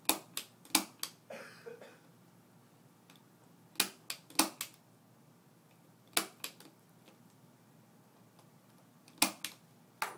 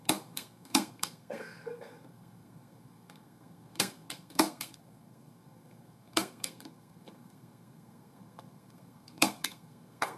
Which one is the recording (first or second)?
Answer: first